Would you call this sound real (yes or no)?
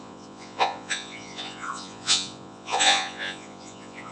no